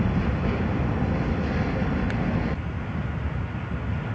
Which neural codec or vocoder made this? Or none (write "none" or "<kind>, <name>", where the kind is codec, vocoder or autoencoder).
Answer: none